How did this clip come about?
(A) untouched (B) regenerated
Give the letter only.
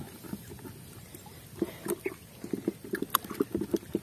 A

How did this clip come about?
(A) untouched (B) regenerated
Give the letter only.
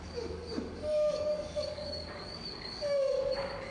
B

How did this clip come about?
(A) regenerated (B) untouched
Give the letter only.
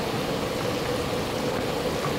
B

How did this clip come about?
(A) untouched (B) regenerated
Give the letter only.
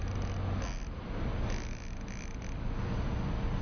A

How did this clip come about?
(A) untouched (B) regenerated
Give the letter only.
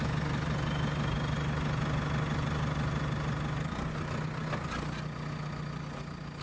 A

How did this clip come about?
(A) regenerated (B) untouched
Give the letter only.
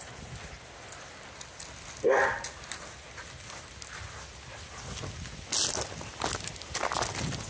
B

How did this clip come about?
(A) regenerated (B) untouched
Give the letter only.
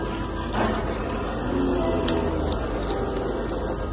B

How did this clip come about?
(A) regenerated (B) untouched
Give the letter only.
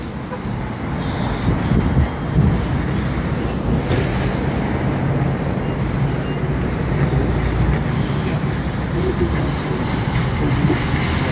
B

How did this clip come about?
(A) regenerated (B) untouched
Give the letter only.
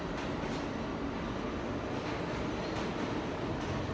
B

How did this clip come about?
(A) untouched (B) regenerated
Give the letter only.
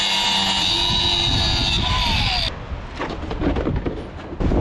A